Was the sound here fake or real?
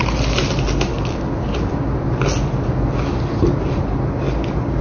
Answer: real